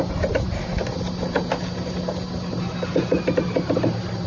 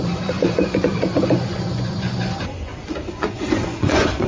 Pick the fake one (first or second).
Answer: second